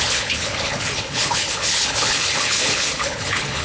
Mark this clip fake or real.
fake